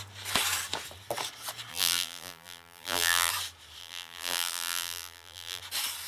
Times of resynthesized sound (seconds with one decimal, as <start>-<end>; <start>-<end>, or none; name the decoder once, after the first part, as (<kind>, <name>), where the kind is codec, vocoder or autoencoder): 1.7-3.3 (vocoder, BigVGAN v2); 3.8-5.6